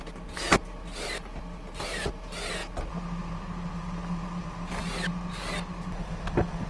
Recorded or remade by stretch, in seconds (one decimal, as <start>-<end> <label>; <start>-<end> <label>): 0.0-6.7 recorded